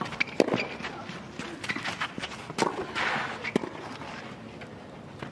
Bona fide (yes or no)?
yes